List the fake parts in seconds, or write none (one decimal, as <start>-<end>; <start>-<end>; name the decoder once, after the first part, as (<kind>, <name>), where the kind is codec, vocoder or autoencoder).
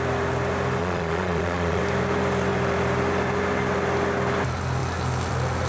0.8-1.8 (vocoder, Vocos)